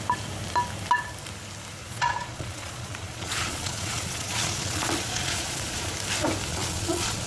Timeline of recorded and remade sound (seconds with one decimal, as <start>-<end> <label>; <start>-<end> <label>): 0.0-1.8 recorded; 1.8-5.9 remade; 5.9-6.5 recorded; 6.5-7.3 remade